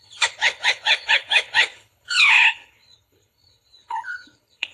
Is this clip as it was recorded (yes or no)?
no